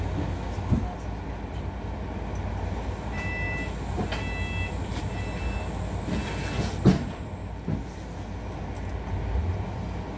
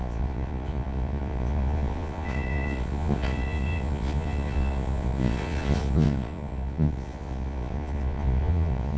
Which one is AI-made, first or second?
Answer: second